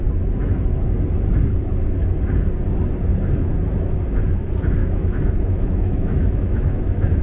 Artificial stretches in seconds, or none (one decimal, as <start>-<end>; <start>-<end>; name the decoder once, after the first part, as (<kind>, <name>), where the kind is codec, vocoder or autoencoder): 4.8-7.2 (autoencoder, DAC-VAE)